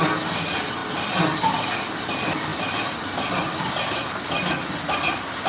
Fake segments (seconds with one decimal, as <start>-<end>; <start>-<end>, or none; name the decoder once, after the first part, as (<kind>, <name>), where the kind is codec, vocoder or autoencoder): none